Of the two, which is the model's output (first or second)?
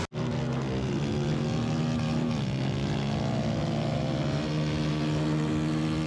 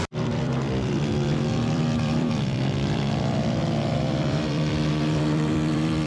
second